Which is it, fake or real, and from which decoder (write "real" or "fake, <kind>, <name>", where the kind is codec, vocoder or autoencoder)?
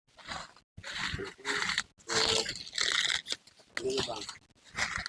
real